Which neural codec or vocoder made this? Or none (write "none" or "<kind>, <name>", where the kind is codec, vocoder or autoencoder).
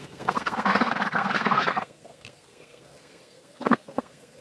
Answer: codec, SNAC